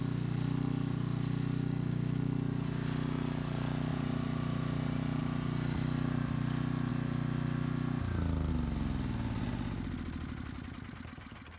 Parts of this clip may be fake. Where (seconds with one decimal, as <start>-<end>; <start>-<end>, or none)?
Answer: 3.9-5.2